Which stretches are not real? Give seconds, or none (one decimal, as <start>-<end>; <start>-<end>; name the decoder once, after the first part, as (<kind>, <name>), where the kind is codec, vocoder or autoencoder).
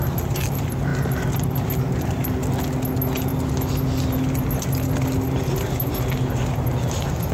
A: 0.9-2.3 (vocoder, BigVGAN v2); 3.3-4.4